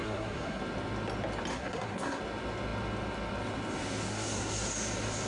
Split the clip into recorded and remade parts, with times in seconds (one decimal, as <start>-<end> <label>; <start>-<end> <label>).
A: 0.0-0.6 remade; 0.6-1.5 recorded; 1.5-2.2 remade; 2.2-4.1 recorded; 4.1-4.7 remade; 4.7-5.3 recorded